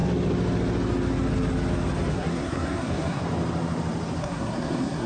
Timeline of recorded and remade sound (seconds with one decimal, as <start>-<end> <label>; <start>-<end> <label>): 0.0-2.1 recorded; 2.1-3.2 remade; 3.2-4.2 recorded; 4.2-5.1 remade

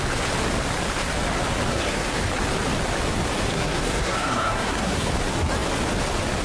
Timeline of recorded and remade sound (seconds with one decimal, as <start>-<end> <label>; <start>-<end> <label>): 0.0-1.7 recorded; 1.7-2.2 remade; 2.2-3.5 recorded; 3.5-5.1 remade; 5.1-6.4 recorded